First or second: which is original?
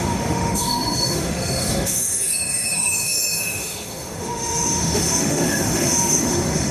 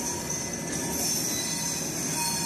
second